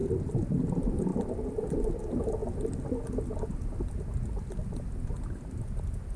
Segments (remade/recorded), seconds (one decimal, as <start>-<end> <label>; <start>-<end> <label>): 0.0-6.2 recorded